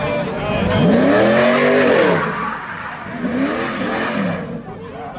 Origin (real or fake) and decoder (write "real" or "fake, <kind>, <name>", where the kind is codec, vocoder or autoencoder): real